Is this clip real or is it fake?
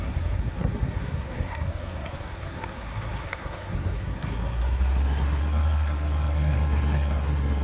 fake